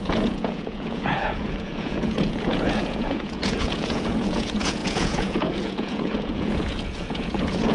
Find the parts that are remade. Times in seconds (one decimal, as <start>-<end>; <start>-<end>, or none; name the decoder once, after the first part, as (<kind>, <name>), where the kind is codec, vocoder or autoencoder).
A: 0.0-7.7 (vocoder, Vocos)

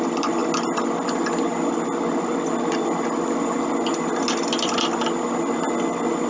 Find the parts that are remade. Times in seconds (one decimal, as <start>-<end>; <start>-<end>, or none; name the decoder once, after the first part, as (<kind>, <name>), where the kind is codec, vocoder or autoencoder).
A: none

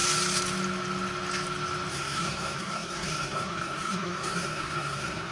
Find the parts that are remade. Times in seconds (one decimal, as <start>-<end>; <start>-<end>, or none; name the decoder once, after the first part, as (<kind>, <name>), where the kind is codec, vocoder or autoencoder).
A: 1.9-5.3 (codec, SNAC)

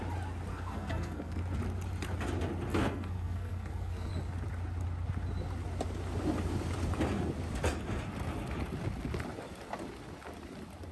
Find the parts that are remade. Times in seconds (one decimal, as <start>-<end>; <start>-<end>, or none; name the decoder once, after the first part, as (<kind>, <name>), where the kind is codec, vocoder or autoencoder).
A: 0.5-1.4 (codec, SNAC); 2.7-4.1

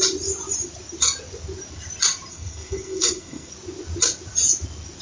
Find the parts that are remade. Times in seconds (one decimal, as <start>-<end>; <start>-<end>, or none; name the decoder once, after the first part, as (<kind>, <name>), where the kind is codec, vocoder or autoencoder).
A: 2.3-3.5 (codec, SNAC)

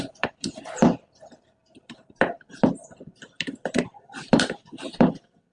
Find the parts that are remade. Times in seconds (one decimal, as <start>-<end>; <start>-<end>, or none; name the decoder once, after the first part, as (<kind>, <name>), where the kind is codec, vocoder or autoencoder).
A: 0.0-5.5 (vocoder, BigVGAN v2)

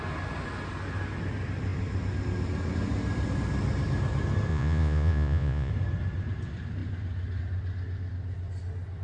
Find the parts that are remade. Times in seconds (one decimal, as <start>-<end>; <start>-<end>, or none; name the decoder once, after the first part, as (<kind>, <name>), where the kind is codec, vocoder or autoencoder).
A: 4.5-5.7 (vocoder, Vocos)